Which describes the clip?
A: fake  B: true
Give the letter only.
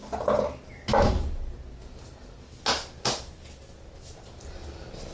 B